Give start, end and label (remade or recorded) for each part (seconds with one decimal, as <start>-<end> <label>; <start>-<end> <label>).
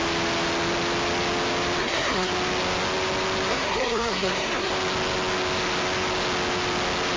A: 0.0-1.8 recorded; 1.8-2.3 remade; 2.3-3.5 recorded; 3.5-4.7 remade; 4.7-7.2 recorded